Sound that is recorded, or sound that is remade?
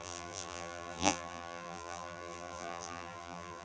remade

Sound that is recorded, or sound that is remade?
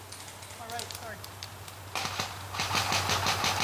recorded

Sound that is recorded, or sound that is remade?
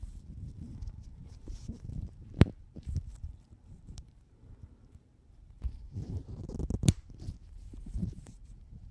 remade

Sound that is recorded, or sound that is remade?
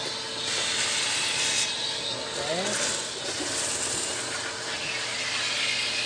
recorded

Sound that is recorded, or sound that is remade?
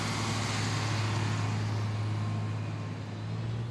recorded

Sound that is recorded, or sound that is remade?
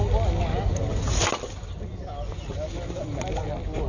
recorded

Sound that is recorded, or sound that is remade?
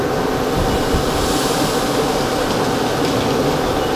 recorded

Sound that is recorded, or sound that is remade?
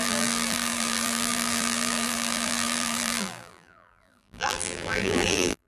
remade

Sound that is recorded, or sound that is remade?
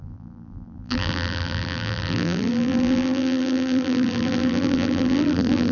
remade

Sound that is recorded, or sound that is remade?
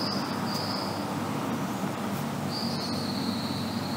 recorded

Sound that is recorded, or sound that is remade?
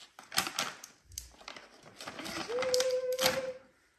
recorded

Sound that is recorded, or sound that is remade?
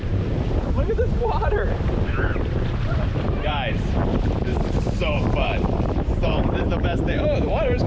remade